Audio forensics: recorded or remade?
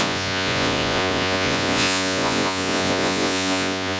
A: remade